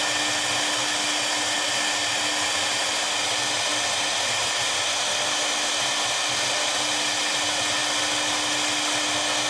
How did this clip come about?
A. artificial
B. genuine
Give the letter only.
B